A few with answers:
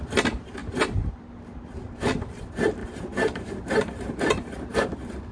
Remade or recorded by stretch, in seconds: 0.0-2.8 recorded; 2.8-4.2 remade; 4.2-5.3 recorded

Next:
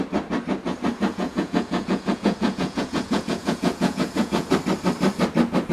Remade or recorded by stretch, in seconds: 0.0-1.1 recorded; 1.1-4.5 remade; 4.5-5.7 recorded

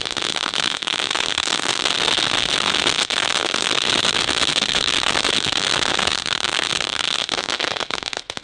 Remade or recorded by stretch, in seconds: 0.0-8.4 remade

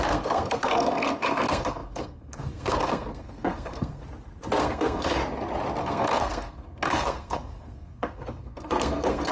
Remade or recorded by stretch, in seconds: 0.0-4.0 remade; 4.0-4.6 recorded; 4.6-5.2 remade; 5.2-5.8 recorded; 5.8-9.3 remade

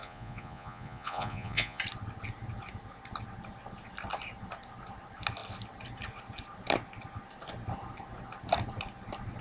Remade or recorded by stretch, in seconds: 0.0-1.8 remade; 1.8-9.4 recorded

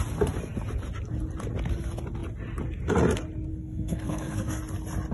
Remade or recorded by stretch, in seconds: 0.0-3.5 recorded; 3.5-4.6 remade; 4.6-5.1 recorded

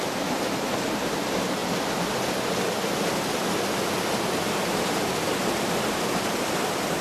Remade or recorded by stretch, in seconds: 0.0-1.6 remade; 1.6-5.8 recorded; 5.8-7.0 remade